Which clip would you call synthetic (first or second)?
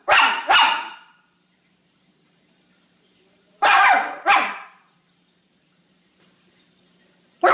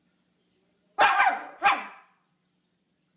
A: first